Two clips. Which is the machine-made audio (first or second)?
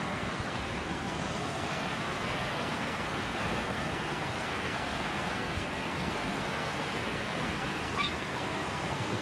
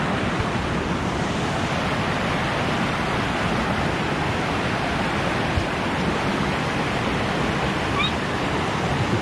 first